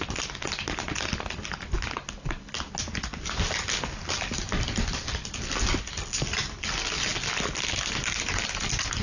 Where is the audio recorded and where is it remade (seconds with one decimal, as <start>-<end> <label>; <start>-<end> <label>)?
0.0-9.0 recorded